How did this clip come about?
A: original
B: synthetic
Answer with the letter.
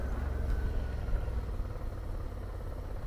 A